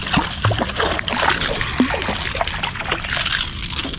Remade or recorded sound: recorded